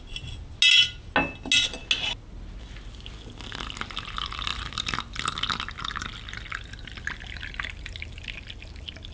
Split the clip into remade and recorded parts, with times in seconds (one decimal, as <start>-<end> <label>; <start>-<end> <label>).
0.0-9.1 recorded